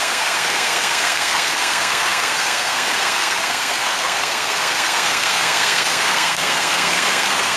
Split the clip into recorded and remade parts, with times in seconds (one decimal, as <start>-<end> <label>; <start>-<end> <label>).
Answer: 0.0-7.6 remade